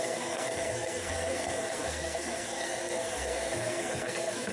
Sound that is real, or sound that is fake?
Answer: fake